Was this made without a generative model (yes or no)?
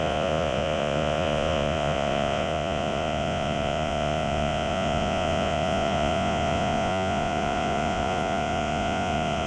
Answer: no